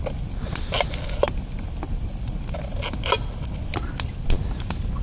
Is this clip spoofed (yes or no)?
no